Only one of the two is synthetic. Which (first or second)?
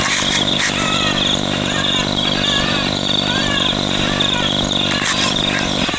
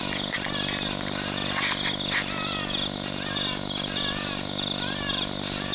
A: first